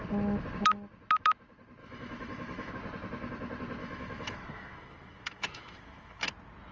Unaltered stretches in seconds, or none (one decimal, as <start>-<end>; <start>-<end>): 0.0-1.8; 2.7-3.8; 6.3-6.7